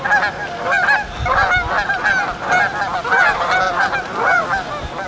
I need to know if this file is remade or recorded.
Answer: recorded